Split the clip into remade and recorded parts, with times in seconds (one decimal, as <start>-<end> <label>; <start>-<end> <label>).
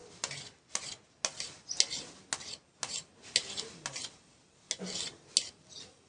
0.0-6.1 recorded